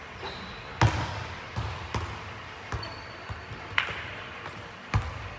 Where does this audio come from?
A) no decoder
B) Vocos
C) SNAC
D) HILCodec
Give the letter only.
A